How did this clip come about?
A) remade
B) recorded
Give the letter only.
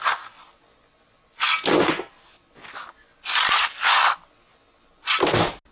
B